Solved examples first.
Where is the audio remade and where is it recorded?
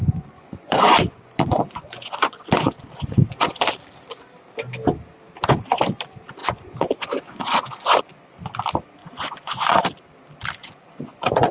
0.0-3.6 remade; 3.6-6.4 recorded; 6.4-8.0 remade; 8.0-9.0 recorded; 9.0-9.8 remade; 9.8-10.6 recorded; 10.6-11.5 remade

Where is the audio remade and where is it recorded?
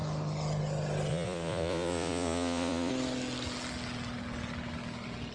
0.0-1.1 recorded; 1.1-2.9 remade; 2.9-5.3 recorded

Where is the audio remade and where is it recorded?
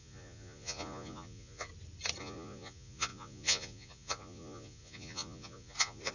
0.0-1.7 remade; 1.7-2.2 recorded; 2.2-6.1 remade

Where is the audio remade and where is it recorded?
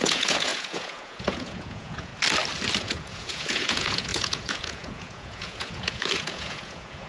0.0-2.1 remade; 2.1-2.8 recorded; 2.8-7.1 remade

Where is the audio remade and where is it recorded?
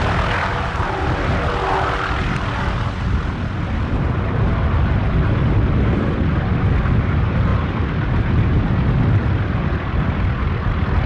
0.0-11.1 recorded